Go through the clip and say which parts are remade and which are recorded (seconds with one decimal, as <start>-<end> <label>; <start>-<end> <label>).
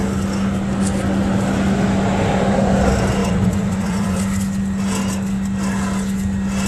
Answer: 0.0-3.2 recorded; 3.2-4.2 remade; 4.2-6.7 recorded